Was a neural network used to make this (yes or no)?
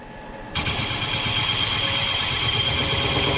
no